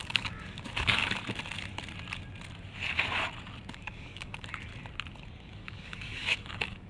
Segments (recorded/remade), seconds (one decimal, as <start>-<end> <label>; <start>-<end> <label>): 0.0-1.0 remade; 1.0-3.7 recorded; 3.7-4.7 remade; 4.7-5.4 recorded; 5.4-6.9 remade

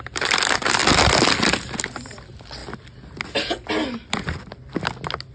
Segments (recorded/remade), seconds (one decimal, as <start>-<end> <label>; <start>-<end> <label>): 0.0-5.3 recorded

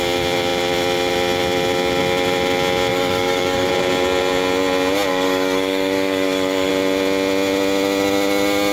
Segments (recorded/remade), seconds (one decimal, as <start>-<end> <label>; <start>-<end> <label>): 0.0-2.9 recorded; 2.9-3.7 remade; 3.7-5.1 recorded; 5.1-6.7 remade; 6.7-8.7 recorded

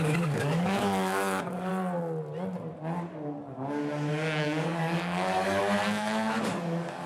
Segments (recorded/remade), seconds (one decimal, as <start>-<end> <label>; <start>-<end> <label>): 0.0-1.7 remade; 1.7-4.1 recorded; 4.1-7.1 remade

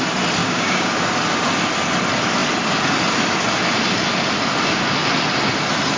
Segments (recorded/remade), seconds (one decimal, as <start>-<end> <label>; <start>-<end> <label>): 0.0-0.4 recorded; 0.4-0.9 remade; 0.9-6.0 recorded

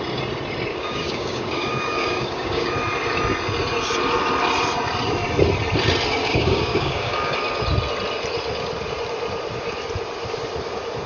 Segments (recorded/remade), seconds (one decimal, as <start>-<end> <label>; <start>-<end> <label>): 0.0-0.7 recorded; 0.7-2.7 remade; 2.7-6.2 recorded; 6.2-7.3 remade; 7.3-11.1 recorded

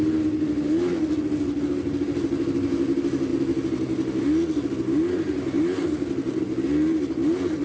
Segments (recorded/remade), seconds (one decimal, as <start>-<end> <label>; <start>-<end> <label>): 0.0-7.6 recorded

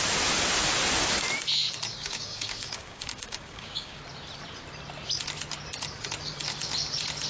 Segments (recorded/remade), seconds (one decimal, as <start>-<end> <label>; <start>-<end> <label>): 0.0-1.9 recorded; 1.9-4.0 remade; 4.0-7.3 recorded